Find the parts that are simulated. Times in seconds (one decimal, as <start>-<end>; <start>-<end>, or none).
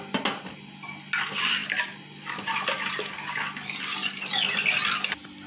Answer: none